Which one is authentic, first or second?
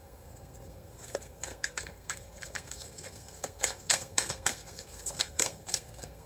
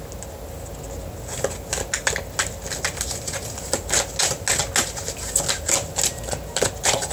second